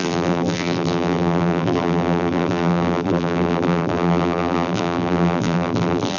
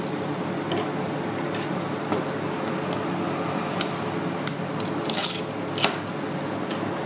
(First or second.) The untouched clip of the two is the second